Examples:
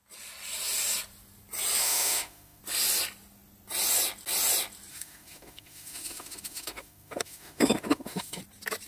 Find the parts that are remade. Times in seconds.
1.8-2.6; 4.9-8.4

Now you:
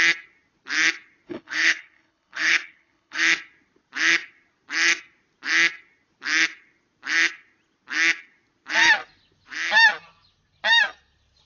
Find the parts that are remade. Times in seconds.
1.3-3.2

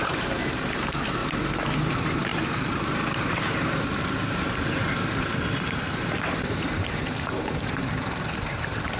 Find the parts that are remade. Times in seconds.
0.0-1.2; 1.9-9.0

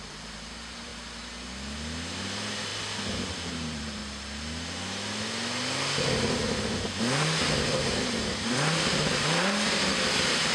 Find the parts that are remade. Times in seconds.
0.0-0.9; 2.2-2.7; 3.5-4.0; 7.0-10.5